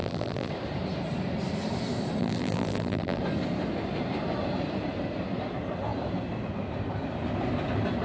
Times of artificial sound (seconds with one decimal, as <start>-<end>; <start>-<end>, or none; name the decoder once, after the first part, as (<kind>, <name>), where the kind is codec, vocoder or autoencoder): 0.0-0.5 (vocoder, BigVGAN v2); 2.2-3.2